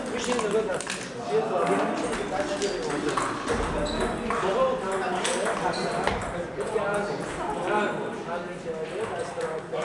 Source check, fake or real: real